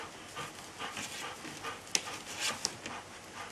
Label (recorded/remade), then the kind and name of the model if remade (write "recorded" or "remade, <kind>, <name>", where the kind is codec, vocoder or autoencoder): recorded